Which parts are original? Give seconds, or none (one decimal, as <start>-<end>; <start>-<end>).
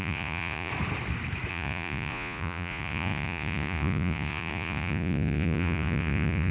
0.7-1.5